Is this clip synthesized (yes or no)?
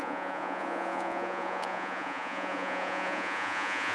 yes